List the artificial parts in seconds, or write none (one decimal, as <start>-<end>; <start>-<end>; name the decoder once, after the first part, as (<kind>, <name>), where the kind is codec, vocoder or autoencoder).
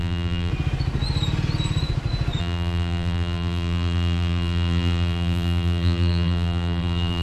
0.0-0.5 (vocoder, BigVGAN v2); 2.4-7.2